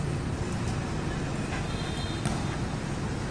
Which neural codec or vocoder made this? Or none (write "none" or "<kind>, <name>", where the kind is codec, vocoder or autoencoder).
none